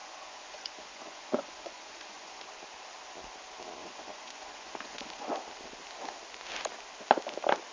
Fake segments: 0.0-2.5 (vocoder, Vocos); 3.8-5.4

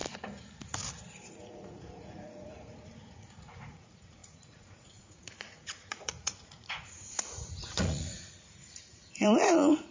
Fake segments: 1.3-9.9 (vocoder, Vocos)

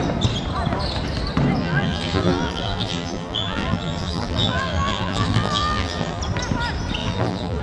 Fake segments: 1.6-6.2 (vocoder, BigVGAN v2); 7.0-7.6

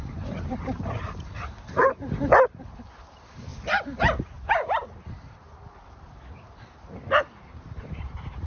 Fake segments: 0.0-3.5 (vocoder, BigVGAN v2); 4.2-8.5